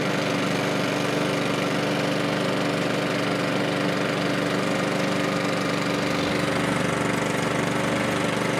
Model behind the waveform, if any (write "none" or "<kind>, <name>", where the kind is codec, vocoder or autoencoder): none